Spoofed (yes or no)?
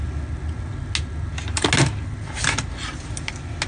no